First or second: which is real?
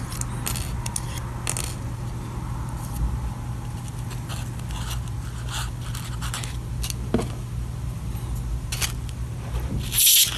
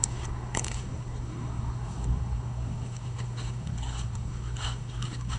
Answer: first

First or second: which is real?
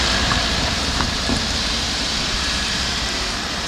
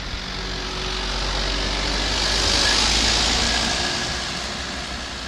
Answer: second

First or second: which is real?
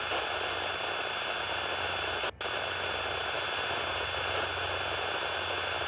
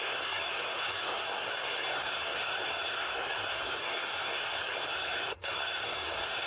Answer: first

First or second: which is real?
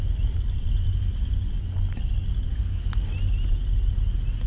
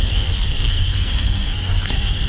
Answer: first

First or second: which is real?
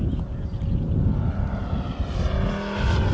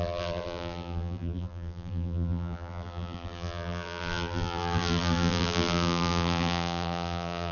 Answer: first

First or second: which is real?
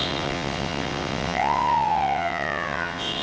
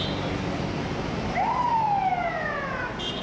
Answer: second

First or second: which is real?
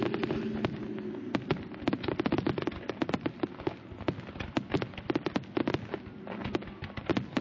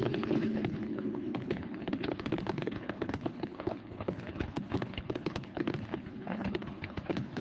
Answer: first